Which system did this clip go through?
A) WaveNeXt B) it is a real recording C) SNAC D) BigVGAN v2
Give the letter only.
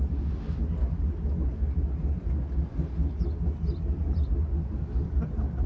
B